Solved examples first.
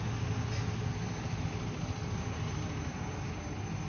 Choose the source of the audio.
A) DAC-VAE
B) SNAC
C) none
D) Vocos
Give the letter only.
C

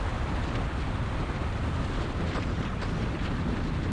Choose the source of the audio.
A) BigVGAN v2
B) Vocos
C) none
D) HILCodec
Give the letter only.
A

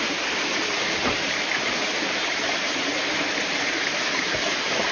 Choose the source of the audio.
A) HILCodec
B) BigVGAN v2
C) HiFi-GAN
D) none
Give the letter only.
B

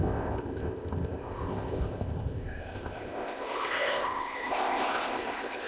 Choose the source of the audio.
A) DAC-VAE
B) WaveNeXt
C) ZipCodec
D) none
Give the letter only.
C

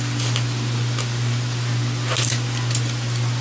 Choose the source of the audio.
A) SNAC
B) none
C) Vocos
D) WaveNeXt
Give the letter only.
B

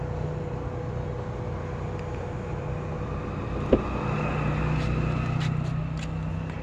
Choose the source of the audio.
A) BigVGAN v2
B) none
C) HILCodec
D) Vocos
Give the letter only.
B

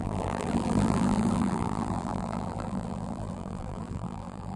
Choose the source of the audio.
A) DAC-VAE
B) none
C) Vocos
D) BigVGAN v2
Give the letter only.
D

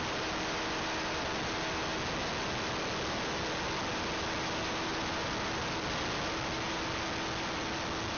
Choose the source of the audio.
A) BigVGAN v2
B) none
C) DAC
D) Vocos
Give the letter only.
B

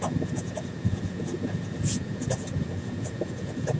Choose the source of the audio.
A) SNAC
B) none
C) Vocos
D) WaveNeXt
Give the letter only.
C